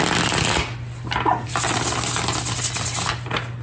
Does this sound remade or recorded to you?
recorded